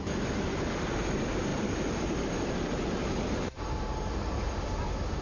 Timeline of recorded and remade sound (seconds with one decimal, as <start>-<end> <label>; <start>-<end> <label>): 0.0-1.5 recorded; 1.5-4.6 remade; 4.6-5.2 recorded